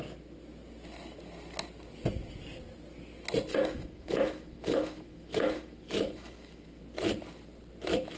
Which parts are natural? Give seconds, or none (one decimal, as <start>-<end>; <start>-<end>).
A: 0.0-3.5; 6.8-8.2